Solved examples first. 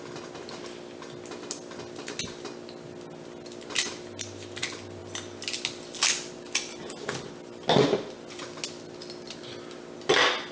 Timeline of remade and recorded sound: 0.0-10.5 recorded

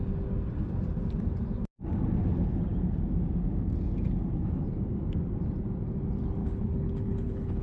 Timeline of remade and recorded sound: 0.0-6.4 recorded; 6.4-7.6 remade

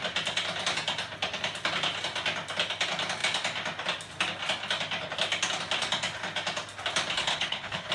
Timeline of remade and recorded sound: 0.0-7.3 recorded; 7.3-7.9 remade

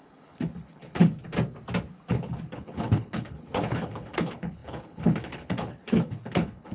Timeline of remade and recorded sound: 0.0-1.3 remade; 1.3-2.1 recorded; 2.1-6.7 remade

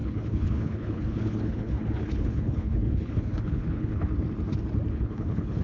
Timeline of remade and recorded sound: 0.0-4.1 remade; 4.1-4.9 recorded; 4.9-5.6 remade

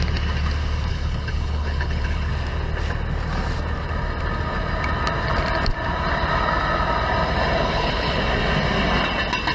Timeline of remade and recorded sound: 0.0-0.9 recorded; 0.9-2.3 remade; 2.3-7.7 recorded; 7.7-8.2 remade; 8.2-9.5 recorded

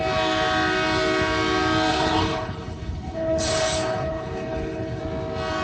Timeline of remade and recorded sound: 0.0-1.9 recorded; 1.9-5.0 remade; 5.0-5.6 recorded

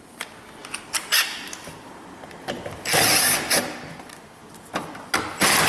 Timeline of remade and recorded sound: 0.0-5.7 recorded